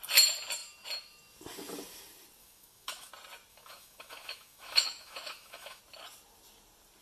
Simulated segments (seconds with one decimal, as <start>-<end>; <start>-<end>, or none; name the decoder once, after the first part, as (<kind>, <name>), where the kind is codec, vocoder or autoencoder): 2.4-3.1 (autoencoder, DAC-VAE); 3.5-5.8